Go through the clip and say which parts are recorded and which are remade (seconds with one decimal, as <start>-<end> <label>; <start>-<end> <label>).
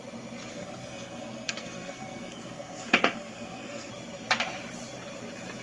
0.0-0.5 recorded; 0.5-3.9 remade; 3.9-5.6 recorded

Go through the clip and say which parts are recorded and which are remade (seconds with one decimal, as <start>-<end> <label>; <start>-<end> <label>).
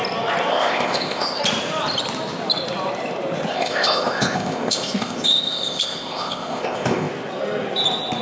0.0-0.5 recorded; 0.5-1.4 remade; 1.4-3.5 recorded; 3.5-7.1 remade; 7.1-8.2 recorded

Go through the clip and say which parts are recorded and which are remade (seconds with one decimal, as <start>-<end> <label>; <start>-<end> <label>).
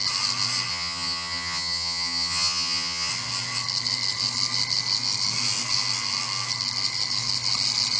0.0-0.7 recorded; 0.7-3.1 remade; 3.1-8.0 recorded